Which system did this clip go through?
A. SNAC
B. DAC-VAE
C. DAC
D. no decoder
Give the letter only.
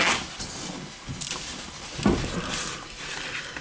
D